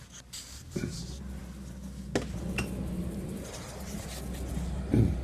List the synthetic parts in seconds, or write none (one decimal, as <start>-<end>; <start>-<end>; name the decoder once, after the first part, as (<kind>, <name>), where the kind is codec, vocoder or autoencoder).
none